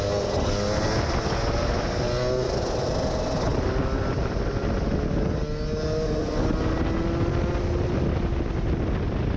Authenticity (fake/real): real